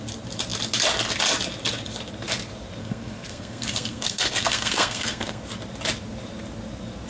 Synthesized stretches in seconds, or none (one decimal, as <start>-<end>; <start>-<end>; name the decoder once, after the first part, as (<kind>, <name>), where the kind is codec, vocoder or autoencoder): 2.8-5.4 (codec, SNAC)